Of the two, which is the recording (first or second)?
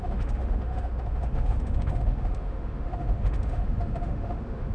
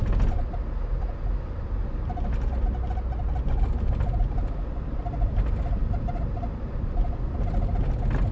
second